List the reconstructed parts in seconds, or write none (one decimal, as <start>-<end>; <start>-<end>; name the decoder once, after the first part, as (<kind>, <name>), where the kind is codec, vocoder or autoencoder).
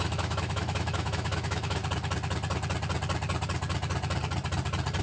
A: 0.0-1.8 (autoencoder, DAC-VAE)